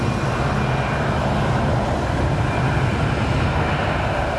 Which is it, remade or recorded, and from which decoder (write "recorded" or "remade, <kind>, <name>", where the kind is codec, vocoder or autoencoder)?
recorded